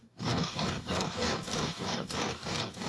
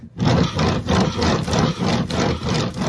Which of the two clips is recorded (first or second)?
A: second